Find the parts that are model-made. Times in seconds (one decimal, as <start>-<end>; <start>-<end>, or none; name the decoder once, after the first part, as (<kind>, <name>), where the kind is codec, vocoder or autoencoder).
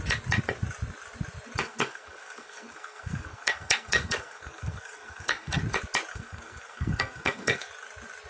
1.6-5.6 (codec, SNAC); 6.1-7.7